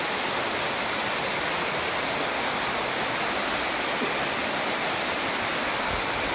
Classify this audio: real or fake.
real